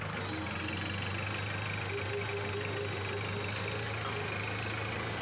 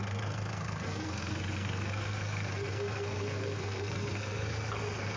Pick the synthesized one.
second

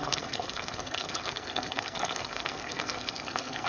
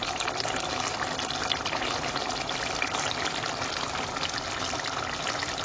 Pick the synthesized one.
first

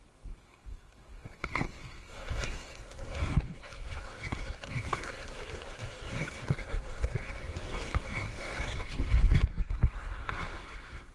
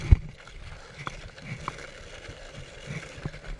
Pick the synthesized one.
first